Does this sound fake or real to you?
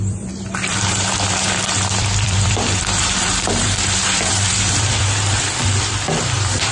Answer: fake